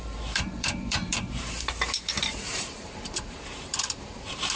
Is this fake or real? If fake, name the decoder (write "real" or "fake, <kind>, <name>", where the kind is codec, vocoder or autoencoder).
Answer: fake, vocoder, BigVGAN v2